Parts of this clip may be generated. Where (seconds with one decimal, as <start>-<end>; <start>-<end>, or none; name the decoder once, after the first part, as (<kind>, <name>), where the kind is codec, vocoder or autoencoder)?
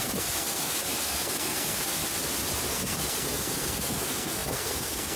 0.0-2.0 (codec, SNAC); 2.7-5.2